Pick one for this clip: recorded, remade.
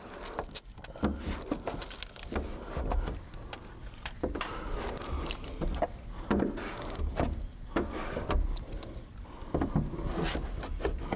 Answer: recorded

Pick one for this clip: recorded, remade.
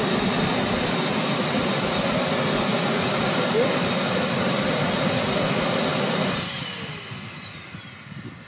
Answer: recorded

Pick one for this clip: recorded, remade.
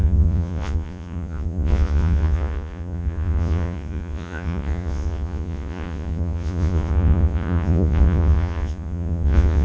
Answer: remade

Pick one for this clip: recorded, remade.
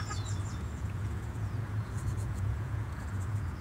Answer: remade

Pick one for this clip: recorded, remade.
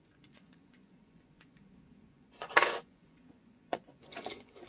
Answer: remade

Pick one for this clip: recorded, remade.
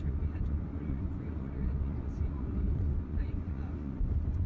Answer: remade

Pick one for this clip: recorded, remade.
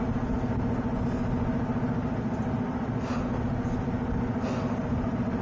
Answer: recorded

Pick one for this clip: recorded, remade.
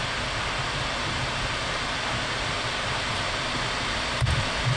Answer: recorded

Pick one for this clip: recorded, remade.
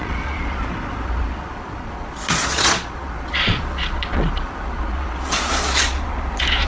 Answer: remade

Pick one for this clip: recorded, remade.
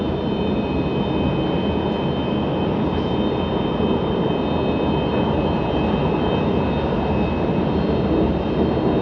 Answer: recorded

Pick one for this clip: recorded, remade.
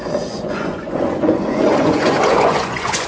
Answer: remade